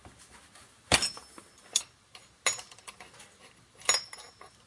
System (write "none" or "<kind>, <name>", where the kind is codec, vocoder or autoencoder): none